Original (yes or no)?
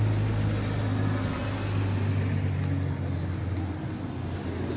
yes